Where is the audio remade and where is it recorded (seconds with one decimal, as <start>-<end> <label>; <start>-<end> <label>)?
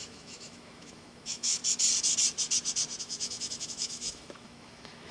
0.0-1.6 remade; 1.6-3.0 recorded; 3.0-5.1 remade